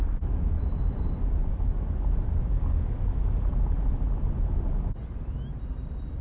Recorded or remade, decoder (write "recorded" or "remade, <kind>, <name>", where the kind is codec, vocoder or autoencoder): recorded